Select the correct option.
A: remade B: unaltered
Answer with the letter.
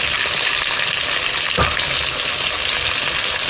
B